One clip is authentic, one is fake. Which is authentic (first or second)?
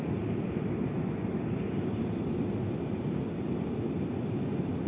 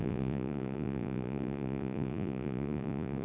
first